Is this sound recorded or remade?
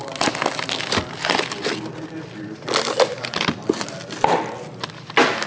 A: recorded